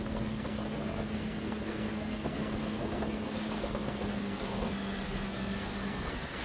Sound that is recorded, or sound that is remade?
remade